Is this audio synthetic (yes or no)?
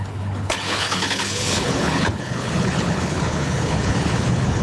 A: yes